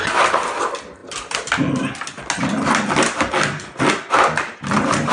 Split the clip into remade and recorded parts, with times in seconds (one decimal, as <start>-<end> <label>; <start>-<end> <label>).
0.0-5.1 recorded